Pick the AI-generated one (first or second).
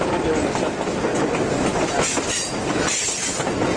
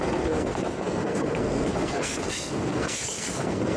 second